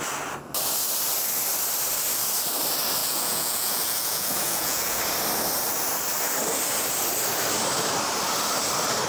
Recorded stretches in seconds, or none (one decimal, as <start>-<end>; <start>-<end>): 0.0-3.0; 5.0-9.1